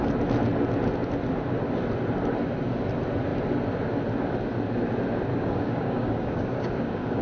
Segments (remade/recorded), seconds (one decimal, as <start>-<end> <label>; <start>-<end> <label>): 0.0-5.3 recorded; 5.3-7.2 remade

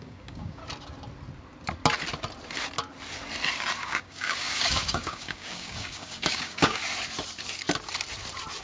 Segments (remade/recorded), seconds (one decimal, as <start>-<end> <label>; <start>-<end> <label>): 0.0-0.6 remade; 0.6-3.8 recorded; 3.8-6.8 remade; 6.8-8.6 recorded

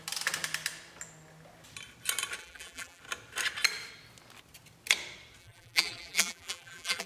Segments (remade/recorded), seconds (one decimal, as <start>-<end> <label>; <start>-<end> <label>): 0.0-2.4 recorded; 2.4-3.0 remade; 3.0-5.4 recorded; 5.4-7.1 remade

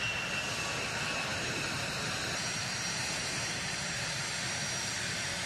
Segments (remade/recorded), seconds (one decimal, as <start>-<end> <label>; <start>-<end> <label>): 0.0-1.3 recorded; 1.3-4.2 remade; 4.2-5.5 recorded

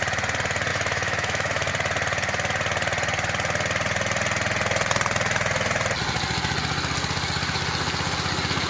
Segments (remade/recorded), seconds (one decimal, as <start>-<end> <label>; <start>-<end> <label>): 0.0-0.7 recorded; 0.7-1.7 remade; 1.7-8.7 recorded

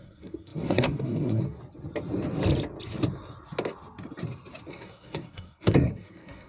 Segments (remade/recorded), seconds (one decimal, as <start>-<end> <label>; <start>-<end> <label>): 0.0-1.6 remade; 1.6-4.7 recorded; 4.7-6.5 remade

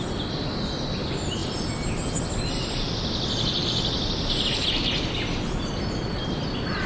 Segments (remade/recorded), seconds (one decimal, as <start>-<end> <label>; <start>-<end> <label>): 0.0-6.9 recorded

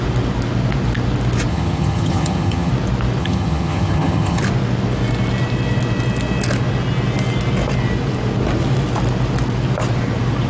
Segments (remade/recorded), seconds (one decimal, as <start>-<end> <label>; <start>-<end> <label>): 0.0-1.5 recorded; 1.5-2.7 remade; 2.7-3.2 recorded; 3.2-4.4 remade; 4.4-10.5 recorded